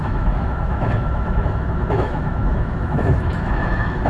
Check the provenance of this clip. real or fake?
fake